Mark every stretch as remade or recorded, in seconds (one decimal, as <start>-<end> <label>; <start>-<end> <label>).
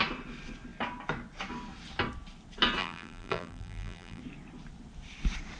0.0-2.8 recorded; 2.8-4.2 remade; 4.2-5.6 recorded